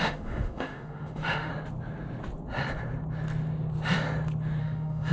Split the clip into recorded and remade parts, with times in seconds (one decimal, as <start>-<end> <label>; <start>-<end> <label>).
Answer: 0.0-1.5 remade; 1.5-4.6 recorded; 4.6-5.1 remade